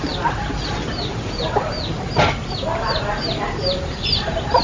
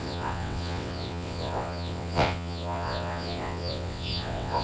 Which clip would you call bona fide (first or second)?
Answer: first